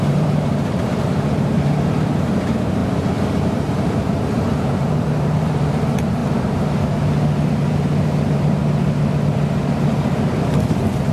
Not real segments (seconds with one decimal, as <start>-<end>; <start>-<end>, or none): 0.0-2.8; 3.4-6.2; 7.5-8.6